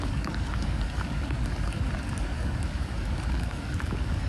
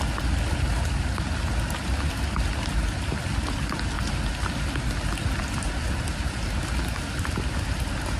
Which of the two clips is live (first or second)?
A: second